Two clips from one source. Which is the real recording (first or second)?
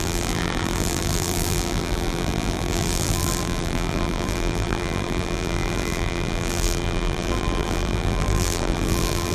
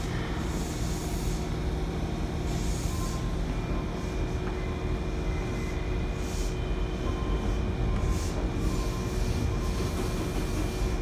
second